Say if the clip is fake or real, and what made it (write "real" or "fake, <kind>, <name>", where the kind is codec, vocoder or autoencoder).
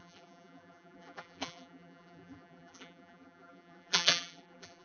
fake, vocoder, BigVGAN v2